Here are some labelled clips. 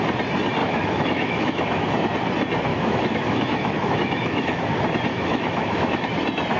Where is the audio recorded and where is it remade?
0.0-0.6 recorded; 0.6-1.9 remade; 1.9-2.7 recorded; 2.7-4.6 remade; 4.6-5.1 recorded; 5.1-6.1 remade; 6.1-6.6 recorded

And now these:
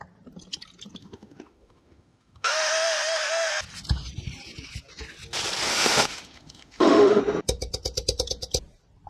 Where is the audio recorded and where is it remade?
0.0-1.0 recorded; 1.0-3.5 remade; 3.5-5.7 recorded; 5.7-7.2 remade; 7.2-9.1 recorded